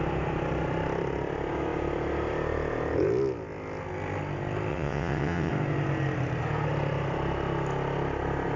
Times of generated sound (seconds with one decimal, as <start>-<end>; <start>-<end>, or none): 4.7-5.5